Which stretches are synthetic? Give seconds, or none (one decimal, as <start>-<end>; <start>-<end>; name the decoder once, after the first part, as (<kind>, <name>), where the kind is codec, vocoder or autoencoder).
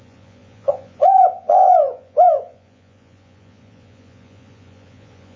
0.0-5.4 (vocoder, Vocos)